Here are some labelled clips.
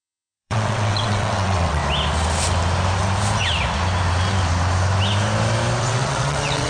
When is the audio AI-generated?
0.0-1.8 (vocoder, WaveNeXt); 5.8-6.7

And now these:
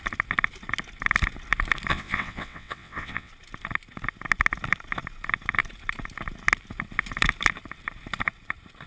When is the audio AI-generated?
1.9-3.3 (vocoder, WaveNeXt)

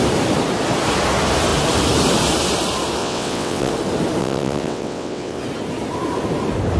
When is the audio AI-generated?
3.0-3.7 (vocoder, WaveNeXt); 4.2-5.4

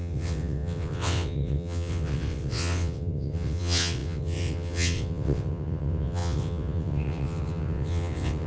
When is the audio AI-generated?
0.0-8.5 (vocoder, WaveNeXt)